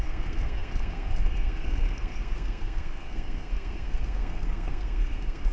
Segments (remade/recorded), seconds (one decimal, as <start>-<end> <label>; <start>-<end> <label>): 0.0-5.5 remade